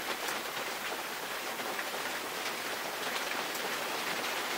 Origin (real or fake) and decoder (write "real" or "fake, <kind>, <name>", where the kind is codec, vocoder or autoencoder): fake, vocoder, BigVGAN v2